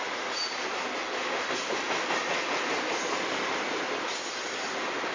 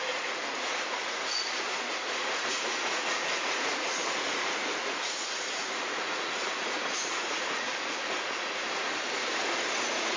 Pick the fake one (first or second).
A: second